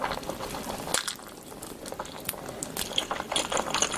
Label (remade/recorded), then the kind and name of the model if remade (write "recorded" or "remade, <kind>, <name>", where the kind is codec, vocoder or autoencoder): recorded